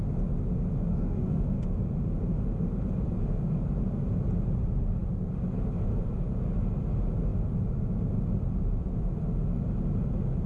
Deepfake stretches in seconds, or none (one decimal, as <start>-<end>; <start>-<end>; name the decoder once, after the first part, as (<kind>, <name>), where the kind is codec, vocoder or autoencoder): 0.9-1.6 (autoencoder, DAC-VAE)